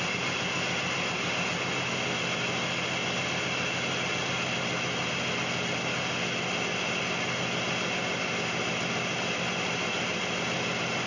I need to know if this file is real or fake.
real